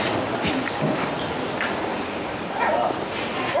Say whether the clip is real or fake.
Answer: real